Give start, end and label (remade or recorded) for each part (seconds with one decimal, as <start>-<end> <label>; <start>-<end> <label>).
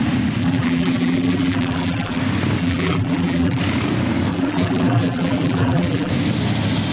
0.0-0.4 recorded; 0.4-2.2 remade; 2.2-2.6 recorded; 2.6-3.6 remade; 3.6-4.3 recorded; 4.3-6.1 remade; 6.1-6.9 recorded